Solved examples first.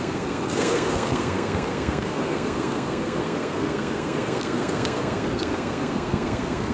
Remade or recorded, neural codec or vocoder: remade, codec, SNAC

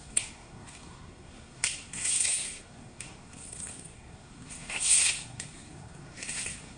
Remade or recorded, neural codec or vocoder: remade, codec, SNAC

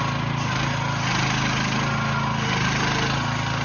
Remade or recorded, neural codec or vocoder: recorded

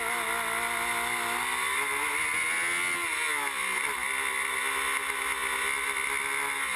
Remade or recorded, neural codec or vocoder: recorded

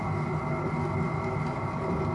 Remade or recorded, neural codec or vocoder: recorded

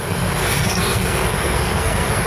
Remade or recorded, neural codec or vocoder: remade, codec, SNAC